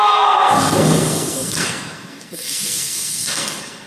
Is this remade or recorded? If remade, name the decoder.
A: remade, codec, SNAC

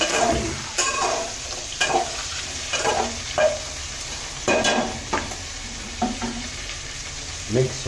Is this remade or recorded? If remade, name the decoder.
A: remade, vocoder, BigVGAN v2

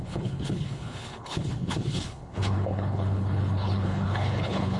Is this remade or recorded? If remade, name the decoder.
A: remade, codec, HILCodec